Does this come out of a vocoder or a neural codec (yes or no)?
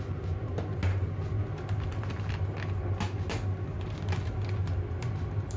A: no